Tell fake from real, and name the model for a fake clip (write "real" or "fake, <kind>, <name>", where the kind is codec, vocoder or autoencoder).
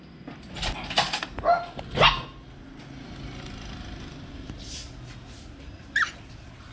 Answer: real